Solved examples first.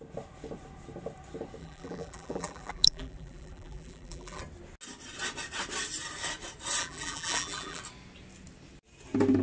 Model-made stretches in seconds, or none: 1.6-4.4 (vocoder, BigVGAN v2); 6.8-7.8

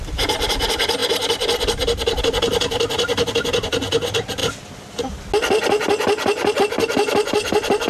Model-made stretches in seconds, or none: none